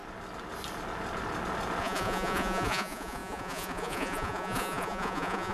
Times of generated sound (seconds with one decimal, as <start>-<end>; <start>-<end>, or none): 1.8-5.5